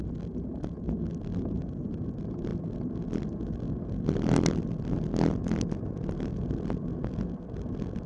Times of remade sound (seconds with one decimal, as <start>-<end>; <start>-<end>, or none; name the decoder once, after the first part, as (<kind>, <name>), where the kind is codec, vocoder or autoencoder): none